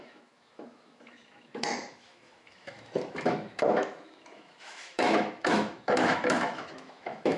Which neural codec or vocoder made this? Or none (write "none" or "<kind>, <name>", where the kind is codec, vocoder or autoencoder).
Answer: autoencoder, DAC-VAE